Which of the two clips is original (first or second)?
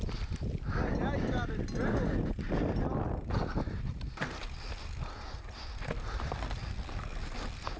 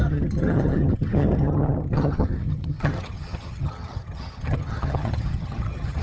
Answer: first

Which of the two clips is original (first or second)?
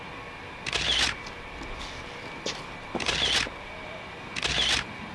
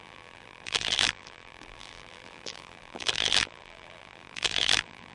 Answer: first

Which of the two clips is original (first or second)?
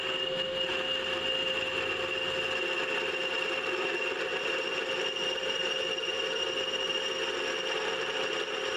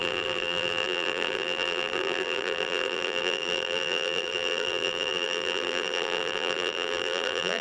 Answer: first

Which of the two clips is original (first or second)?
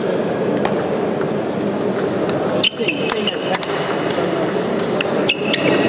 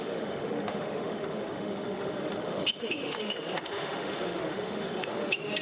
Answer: first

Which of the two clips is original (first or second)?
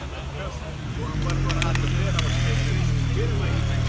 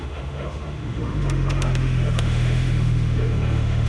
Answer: first